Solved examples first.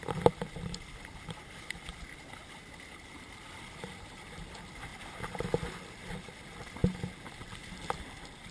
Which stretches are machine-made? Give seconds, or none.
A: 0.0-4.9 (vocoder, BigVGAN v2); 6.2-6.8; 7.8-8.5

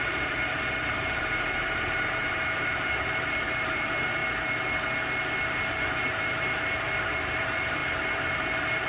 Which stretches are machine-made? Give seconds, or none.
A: 0.0-4.2 (vocoder, BigVGAN v2); 5.6-8.9